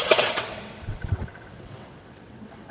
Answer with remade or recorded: remade